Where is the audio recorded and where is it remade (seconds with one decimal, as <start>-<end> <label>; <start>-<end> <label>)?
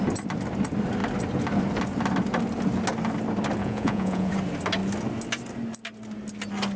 0.0-3.6 recorded; 3.6-4.3 remade; 4.3-6.8 recorded